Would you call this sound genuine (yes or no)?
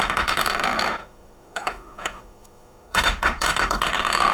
no